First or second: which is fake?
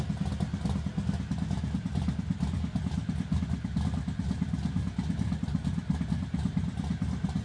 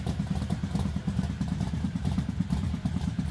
second